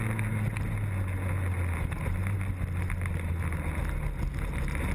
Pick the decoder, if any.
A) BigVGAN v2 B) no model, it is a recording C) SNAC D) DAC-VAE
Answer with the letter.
B